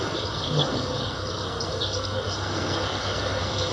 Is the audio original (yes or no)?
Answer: no